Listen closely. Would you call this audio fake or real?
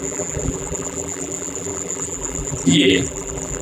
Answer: fake